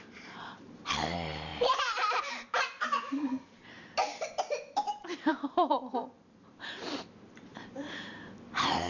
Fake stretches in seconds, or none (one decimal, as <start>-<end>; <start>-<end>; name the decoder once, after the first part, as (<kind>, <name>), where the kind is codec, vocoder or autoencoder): 0.0-8.9 (vocoder, BigVGAN v2)